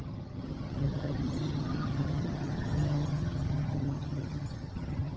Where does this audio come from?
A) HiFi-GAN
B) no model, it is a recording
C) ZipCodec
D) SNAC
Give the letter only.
A